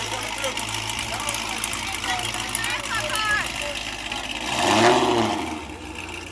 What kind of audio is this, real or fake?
real